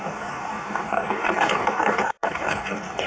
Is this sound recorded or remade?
remade